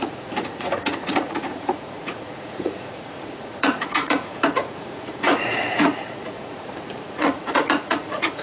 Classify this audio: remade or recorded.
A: remade